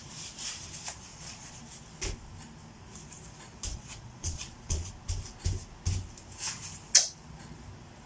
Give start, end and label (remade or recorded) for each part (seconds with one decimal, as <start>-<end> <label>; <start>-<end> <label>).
0.0-1.1 recorded; 1.1-1.6 remade; 1.6-3.7 recorded; 3.7-4.9 remade; 4.9-8.1 recorded